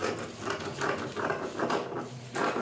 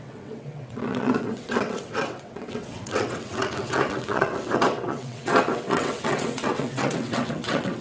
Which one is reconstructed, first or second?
second